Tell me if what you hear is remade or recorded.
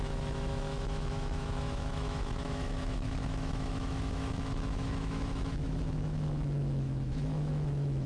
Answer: remade